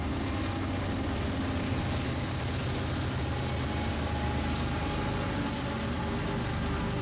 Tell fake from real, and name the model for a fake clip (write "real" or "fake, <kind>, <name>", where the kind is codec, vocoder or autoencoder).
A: real